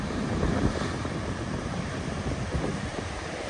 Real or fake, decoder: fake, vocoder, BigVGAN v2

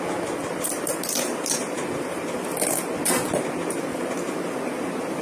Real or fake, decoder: real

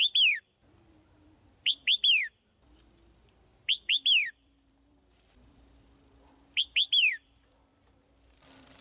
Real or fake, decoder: fake, vocoder, BigVGAN v2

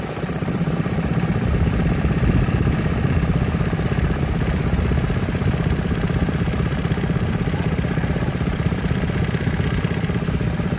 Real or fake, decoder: fake, vocoder, BigVGAN v2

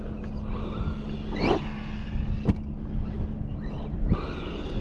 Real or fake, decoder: real